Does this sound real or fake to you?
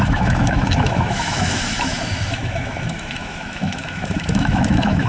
fake